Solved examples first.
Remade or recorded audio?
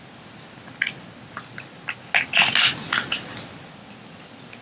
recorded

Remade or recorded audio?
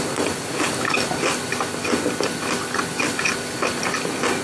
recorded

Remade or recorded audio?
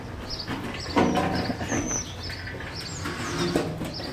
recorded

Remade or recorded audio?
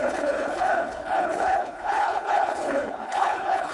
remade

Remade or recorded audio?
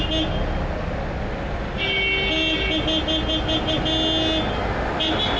recorded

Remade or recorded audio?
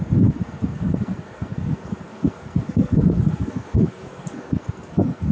remade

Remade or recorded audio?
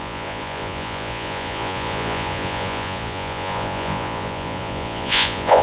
remade